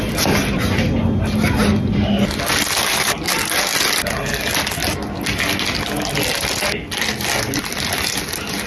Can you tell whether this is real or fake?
real